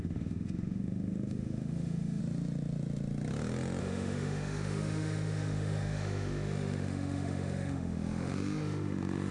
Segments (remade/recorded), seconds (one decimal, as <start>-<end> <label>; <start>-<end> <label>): 0.0-2.2 remade; 2.2-3.8 recorded; 3.8-9.3 remade